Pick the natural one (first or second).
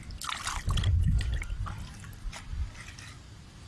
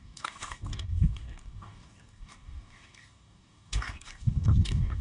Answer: first